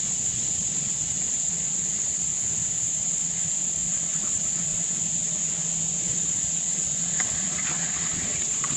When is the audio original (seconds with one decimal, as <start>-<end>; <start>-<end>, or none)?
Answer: 2.3-2.9; 4.7-6.0